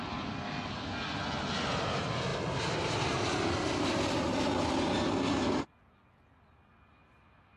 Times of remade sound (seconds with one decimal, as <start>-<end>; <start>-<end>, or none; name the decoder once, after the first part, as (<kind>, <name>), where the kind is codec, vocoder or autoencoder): none